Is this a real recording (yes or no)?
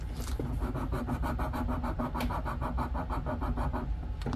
yes